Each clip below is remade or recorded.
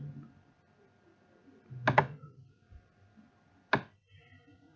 recorded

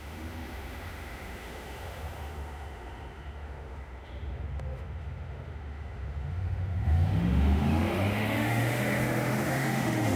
remade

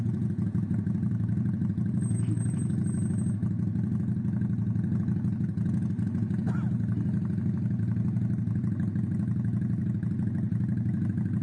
recorded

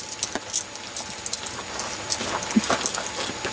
recorded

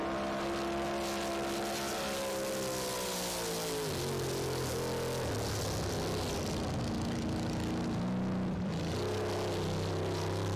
recorded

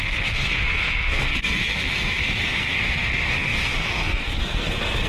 remade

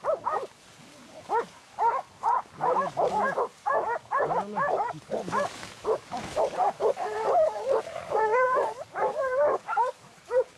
remade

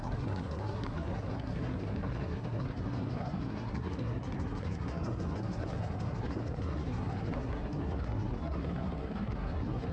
remade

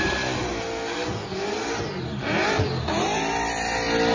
recorded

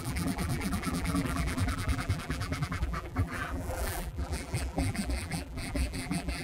remade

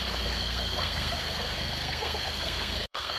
remade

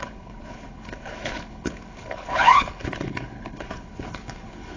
remade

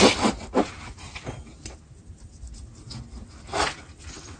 recorded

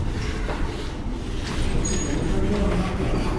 recorded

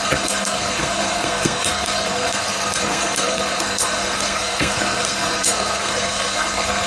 remade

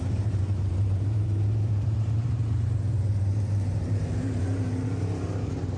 remade